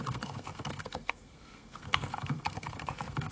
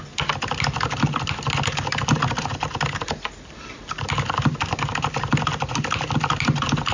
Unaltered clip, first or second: second